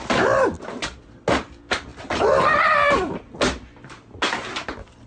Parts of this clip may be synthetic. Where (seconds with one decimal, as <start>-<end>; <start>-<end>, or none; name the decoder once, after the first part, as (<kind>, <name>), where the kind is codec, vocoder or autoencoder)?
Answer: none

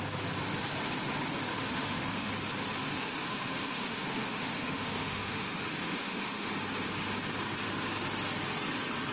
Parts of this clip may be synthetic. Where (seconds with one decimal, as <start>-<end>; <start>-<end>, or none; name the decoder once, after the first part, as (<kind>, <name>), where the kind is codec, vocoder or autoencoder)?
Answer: 1.5-2.3 (autoencoder, DAC-VAE); 2.8-6.5

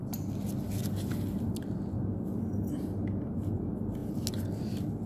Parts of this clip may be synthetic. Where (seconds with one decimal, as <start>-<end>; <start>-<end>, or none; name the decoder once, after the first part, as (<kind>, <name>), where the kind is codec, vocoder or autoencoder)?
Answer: none

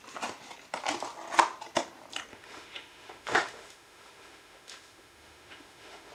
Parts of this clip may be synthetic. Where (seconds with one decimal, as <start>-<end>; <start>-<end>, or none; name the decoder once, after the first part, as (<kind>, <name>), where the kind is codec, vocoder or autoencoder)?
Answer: 2.3-6.1 (autoencoder, DAC-VAE)